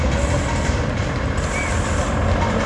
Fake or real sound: real